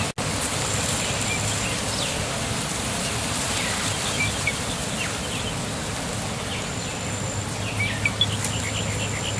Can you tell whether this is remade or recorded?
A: recorded